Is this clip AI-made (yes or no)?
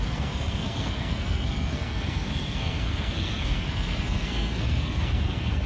yes